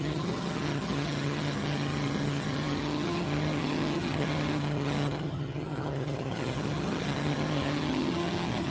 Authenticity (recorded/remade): remade